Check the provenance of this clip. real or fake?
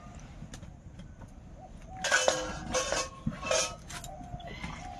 real